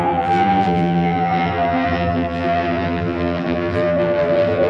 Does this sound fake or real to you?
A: fake